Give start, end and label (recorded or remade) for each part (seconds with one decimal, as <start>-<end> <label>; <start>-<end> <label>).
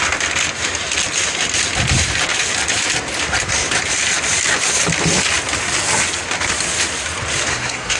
0.0-7.5 recorded; 7.5-8.0 remade